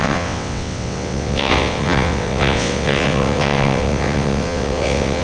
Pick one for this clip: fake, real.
fake